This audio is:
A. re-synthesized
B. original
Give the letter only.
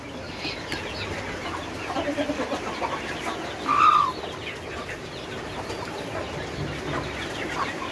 B